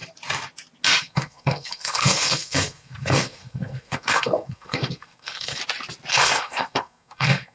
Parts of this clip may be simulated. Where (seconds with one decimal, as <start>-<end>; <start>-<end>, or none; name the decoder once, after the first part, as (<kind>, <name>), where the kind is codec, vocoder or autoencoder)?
1.0-5.6 (codec, SNAC); 6.1-7.5